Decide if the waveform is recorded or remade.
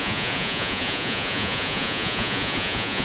remade